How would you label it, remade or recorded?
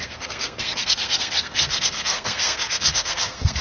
remade